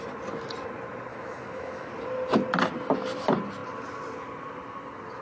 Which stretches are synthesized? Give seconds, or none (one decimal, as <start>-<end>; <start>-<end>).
1.1-1.9